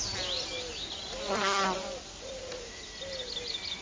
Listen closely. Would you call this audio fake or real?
real